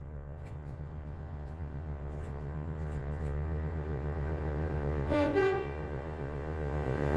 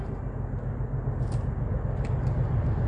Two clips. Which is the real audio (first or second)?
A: second